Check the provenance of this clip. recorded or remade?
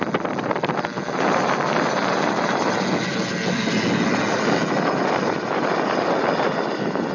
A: recorded